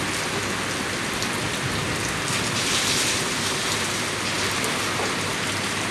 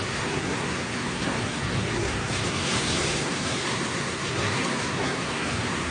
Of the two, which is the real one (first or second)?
first